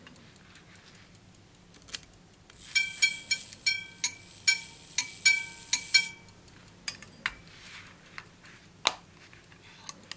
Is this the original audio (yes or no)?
yes